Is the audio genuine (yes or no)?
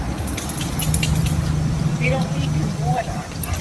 yes